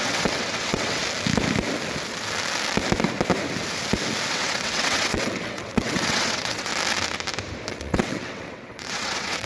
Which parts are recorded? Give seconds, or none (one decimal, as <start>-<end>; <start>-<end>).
1.0-4.3; 6.7-7.7